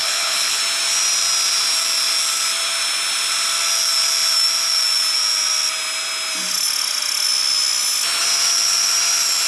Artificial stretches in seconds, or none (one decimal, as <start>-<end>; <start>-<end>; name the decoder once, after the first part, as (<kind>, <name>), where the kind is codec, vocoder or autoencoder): 0.0-0.6 (codec, HILCodec)